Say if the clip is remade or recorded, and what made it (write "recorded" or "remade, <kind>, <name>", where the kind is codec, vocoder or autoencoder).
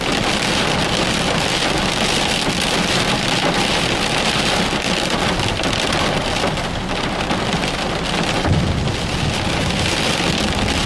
recorded